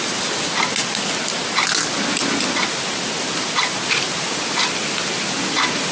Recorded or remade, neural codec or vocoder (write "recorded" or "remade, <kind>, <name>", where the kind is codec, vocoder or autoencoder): recorded